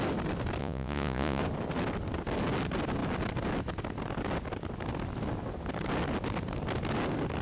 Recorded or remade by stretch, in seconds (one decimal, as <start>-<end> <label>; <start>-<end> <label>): 0.0-0.6 recorded; 0.6-1.4 remade; 1.4-7.4 recorded